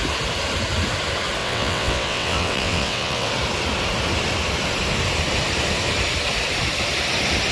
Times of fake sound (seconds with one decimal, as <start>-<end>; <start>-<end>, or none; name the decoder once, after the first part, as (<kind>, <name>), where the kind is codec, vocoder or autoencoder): 1.4-3.3 (vocoder, WaveNeXt)